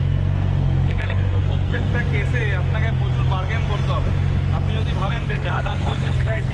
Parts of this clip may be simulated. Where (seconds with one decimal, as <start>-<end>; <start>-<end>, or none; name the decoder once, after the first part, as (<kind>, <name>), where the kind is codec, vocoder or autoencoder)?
0.0-1.9 (codec, SNAC); 5.1-6.5